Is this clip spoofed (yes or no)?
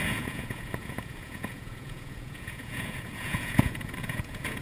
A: yes